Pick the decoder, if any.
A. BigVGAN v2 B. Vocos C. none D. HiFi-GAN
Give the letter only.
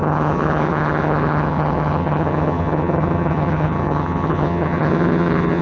D